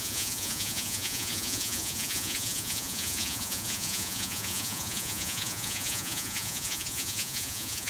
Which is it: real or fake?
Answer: fake